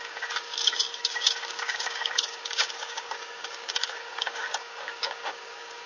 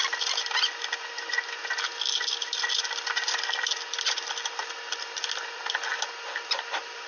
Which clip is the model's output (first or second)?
first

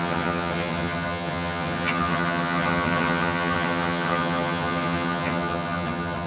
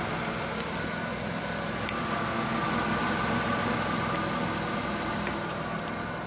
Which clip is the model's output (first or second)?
first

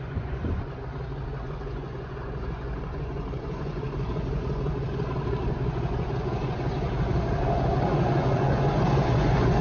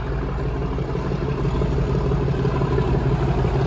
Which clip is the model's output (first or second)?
first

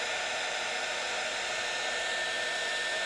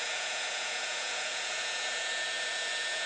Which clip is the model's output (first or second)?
second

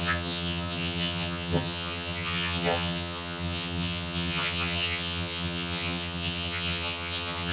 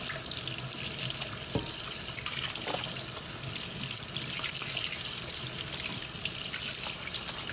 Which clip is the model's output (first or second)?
first